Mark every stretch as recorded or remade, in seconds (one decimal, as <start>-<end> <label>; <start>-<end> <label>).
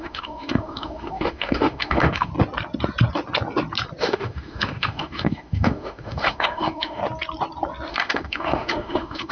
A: 0.0-2.3 remade; 2.3-4.0 recorded; 4.0-7.0 remade; 7.0-7.9 recorded; 7.9-9.3 remade